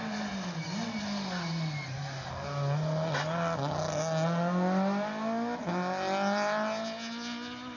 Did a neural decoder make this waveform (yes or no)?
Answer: no